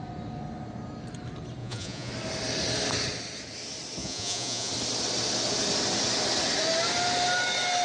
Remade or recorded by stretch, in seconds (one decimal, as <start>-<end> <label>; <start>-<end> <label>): 0.0-1.6 recorded; 1.6-2.1 remade; 2.1-4.0 recorded; 4.0-4.7 remade; 4.7-7.8 recorded